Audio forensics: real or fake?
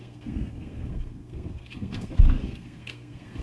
fake